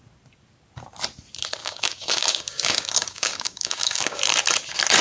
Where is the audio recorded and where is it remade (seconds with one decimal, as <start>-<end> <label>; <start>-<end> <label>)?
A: 0.0-1.6 recorded; 1.6-4.2 remade; 4.2-5.0 recorded